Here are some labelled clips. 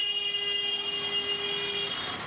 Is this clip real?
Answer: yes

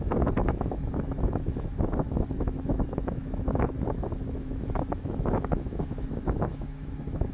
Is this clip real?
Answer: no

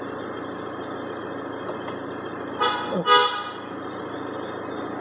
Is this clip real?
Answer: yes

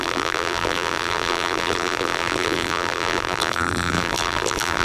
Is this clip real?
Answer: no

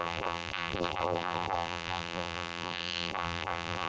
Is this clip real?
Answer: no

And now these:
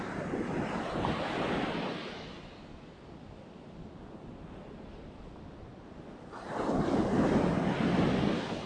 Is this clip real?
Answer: yes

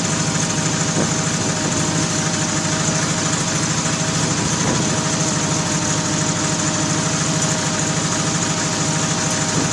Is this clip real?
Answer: yes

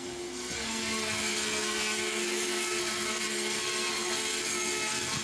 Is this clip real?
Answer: no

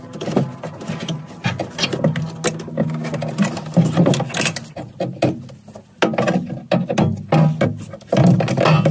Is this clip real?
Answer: yes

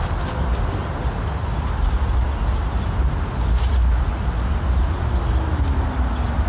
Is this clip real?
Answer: yes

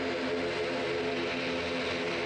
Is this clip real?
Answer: yes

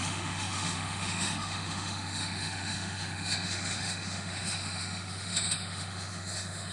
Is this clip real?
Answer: no